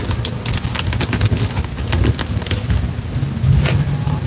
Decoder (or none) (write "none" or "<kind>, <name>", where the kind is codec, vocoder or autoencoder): none